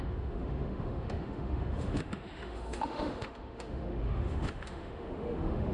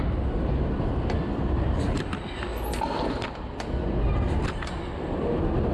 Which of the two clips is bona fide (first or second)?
second